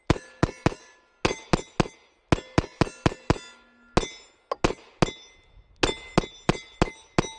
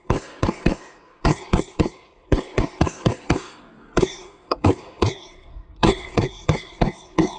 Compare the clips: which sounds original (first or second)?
first